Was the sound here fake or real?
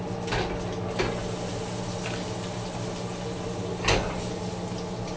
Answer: real